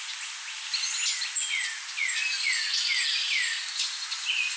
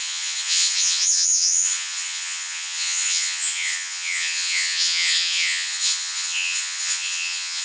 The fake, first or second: second